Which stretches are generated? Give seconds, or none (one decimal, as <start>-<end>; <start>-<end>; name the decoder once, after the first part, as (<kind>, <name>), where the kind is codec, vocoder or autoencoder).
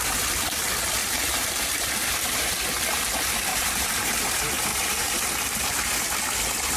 1.0-2.4 (vocoder, BigVGAN v2); 3.5-4.1; 4.7-6.2